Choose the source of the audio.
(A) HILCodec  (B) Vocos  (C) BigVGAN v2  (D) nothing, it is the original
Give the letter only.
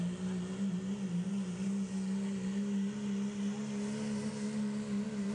D